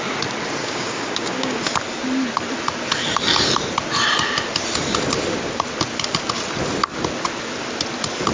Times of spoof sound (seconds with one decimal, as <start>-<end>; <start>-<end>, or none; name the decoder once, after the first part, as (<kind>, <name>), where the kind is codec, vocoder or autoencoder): 0.6-1.6 (codec, DAC)